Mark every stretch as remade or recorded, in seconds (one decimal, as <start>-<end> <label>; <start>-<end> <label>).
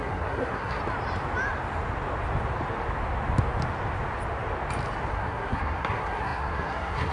0.0-0.8 remade; 0.8-5.1 recorded; 5.1-7.1 remade